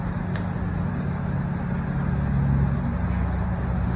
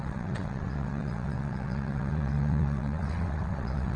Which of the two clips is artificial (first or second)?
second